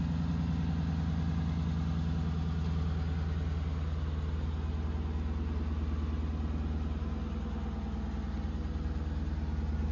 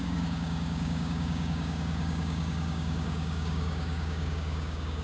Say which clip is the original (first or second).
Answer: first